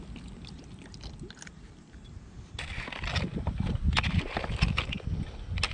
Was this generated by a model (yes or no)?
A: no